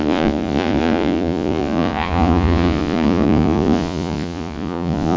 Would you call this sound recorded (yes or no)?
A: no